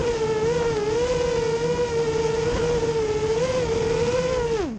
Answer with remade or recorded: recorded